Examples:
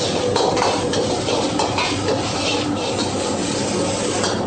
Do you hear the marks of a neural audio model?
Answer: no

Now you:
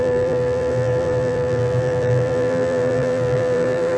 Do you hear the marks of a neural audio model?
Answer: yes